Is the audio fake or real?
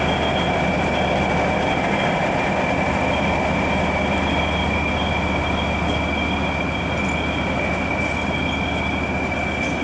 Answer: real